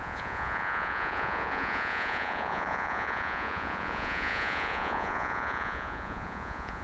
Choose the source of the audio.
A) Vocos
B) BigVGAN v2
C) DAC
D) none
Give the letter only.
A